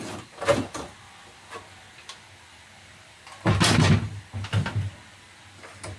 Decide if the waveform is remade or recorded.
recorded